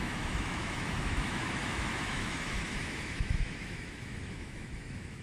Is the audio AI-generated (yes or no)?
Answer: yes